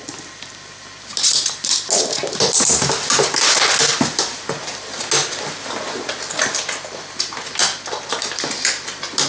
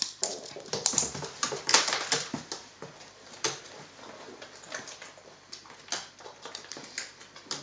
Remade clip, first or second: second